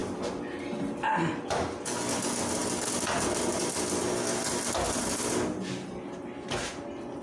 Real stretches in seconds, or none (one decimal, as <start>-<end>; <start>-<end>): 0.0-7.2